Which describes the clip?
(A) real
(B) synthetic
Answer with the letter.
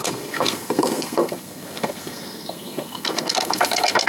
B